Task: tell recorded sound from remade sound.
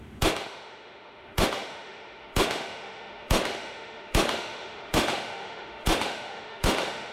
remade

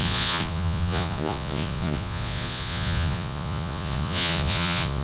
remade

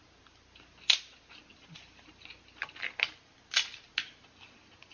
recorded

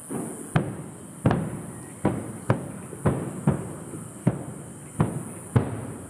recorded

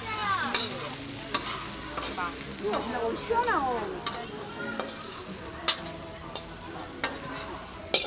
recorded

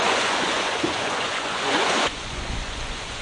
remade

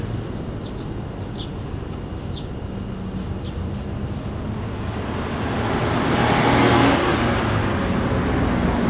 recorded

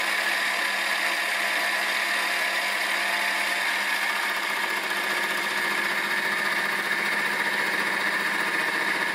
recorded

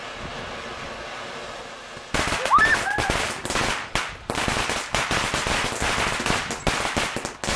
recorded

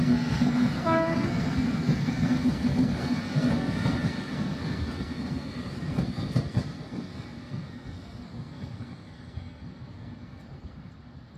remade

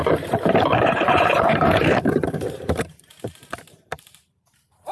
remade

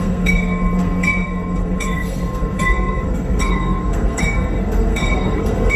remade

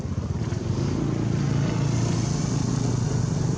recorded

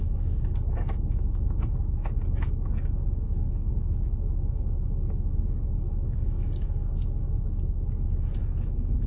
remade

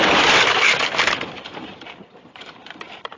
remade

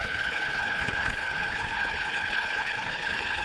remade